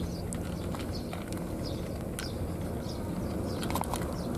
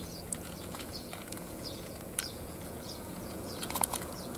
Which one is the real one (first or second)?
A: first